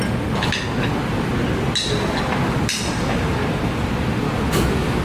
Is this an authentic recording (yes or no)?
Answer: yes